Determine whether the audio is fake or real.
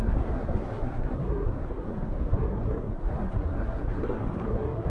fake